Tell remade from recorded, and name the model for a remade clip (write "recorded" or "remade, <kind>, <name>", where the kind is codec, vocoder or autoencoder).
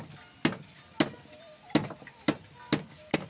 recorded